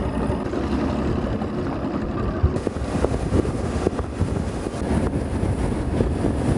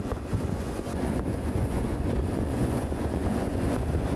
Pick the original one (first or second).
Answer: first